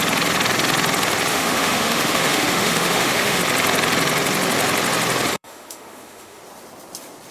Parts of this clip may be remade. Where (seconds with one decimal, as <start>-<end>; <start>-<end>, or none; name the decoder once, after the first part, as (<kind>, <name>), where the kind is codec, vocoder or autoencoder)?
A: 1.3-3.4 (autoencoder, DAC-VAE); 5.3-6.4